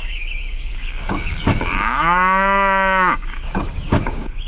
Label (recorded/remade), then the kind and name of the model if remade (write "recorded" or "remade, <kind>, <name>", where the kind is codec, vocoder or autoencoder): remade, codec, DAC